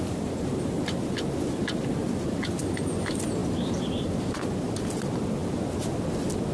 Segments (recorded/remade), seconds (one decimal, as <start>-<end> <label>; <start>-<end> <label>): 0.0-6.5 recorded